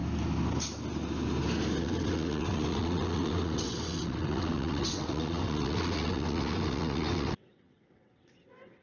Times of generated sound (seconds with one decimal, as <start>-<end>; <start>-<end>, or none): 1.8-8.8